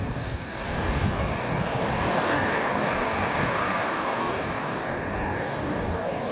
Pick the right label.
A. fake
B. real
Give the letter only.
A